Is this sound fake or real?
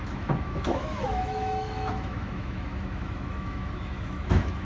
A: fake